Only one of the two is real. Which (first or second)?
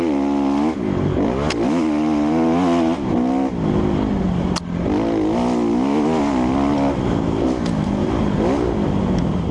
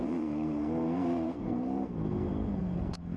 first